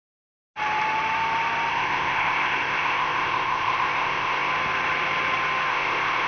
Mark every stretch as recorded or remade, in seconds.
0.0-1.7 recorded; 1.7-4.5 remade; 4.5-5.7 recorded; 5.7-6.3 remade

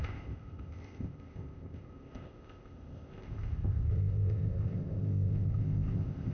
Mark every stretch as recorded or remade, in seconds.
0.0-6.3 remade

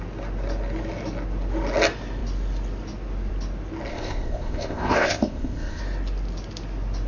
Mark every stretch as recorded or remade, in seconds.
0.0-3.9 recorded; 3.9-5.8 remade; 5.8-7.1 recorded